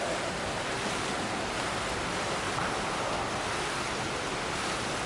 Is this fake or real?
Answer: real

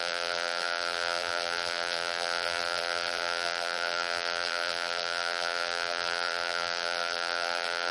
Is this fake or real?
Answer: fake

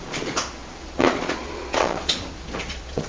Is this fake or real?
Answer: fake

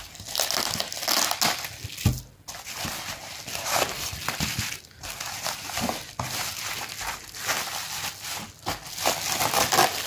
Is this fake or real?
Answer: real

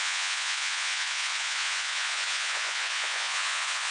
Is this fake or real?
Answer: fake